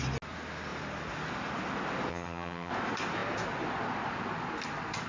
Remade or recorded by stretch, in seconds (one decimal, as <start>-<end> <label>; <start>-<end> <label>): 0.0-2.1 recorded; 2.1-2.7 remade; 2.7-5.1 recorded